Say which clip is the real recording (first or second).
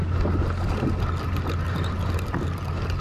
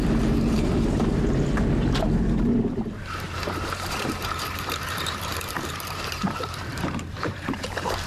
first